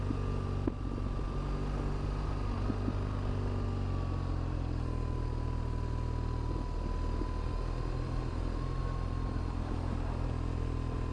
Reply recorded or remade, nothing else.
recorded